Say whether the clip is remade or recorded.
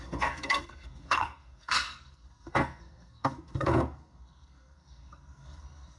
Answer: remade